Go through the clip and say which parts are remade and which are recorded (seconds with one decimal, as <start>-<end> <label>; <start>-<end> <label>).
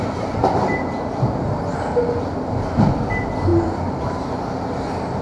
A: 0.0-3.5 recorded; 3.5-4.0 remade; 4.0-5.2 recorded